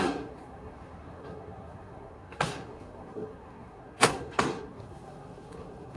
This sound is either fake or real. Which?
fake